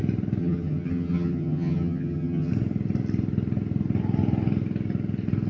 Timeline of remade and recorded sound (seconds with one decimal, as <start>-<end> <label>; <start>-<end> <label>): 0.0-0.4 recorded; 0.4-2.5 remade; 2.5-5.5 recorded